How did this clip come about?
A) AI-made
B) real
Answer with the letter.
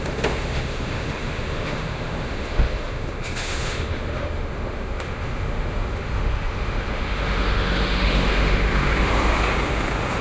A